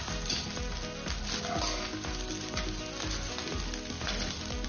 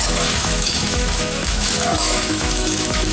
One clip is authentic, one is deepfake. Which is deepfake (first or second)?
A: second